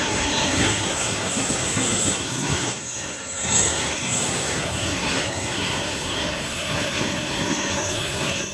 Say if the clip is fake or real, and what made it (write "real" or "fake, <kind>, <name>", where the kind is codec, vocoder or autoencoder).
fake, codec, SNAC